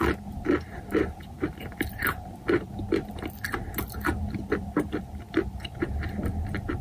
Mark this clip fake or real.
fake